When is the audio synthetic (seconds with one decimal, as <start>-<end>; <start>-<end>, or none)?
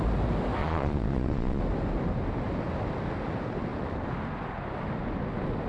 0.6-1.6